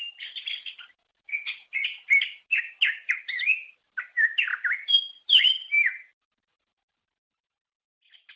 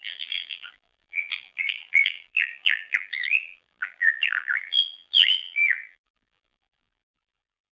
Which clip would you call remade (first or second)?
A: second